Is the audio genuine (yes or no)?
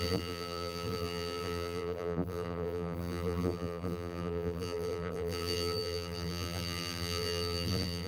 no